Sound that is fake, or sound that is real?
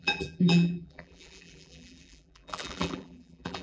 fake